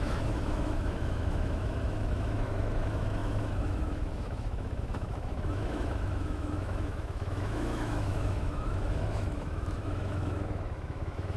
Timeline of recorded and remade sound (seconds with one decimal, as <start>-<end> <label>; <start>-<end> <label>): 0.0-11.4 remade